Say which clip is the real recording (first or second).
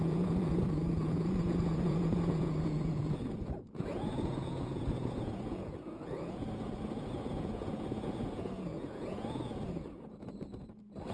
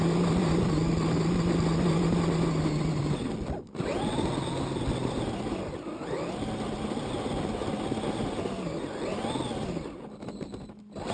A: second